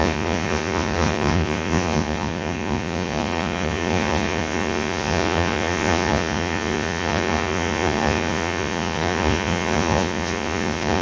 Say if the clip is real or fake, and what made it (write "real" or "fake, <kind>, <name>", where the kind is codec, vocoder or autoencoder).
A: fake, vocoder, Vocos